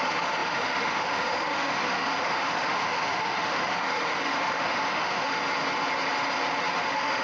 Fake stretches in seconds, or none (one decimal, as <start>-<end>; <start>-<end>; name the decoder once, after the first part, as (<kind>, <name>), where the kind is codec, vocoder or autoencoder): 0.0-5.4 (autoencoder, DAC-VAE); 6.8-7.2